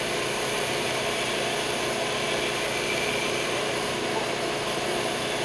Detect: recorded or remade recorded